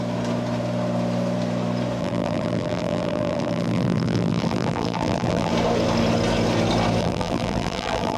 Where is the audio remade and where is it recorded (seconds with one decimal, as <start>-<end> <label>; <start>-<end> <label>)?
0.0-2.0 recorded; 2.0-5.5 remade; 5.5-7.0 recorded; 7.0-8.2 remade